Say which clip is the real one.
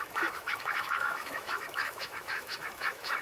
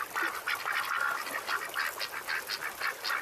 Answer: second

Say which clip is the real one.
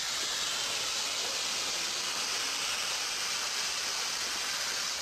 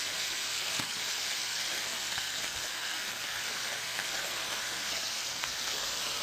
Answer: first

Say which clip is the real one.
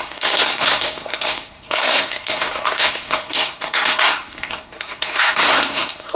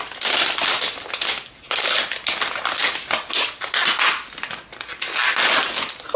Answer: second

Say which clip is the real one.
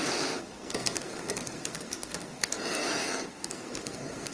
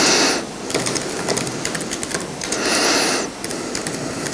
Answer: second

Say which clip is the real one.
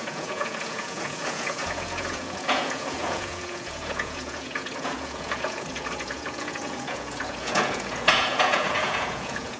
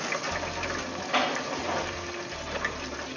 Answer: second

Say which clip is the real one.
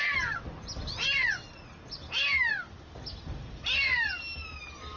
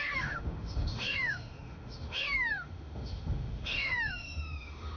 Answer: first